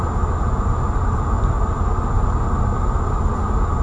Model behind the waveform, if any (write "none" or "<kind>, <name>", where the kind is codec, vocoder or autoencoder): none